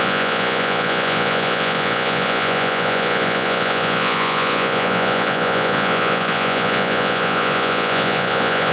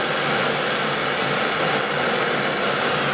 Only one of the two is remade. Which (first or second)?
first